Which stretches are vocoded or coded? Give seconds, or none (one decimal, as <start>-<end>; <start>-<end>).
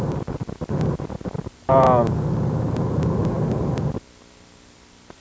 none